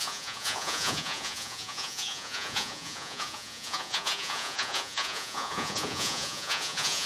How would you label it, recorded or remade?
remade